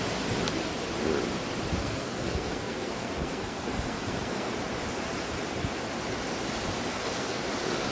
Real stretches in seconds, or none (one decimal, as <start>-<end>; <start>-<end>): 0.0-1.8; 4.5-6.9; 7.4-7.9